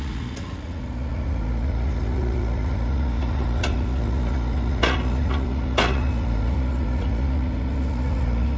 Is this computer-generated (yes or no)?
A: yes